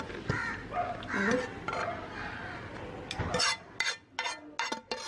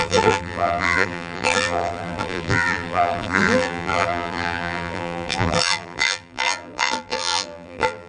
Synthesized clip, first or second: second